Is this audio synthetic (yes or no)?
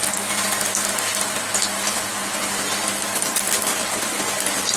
no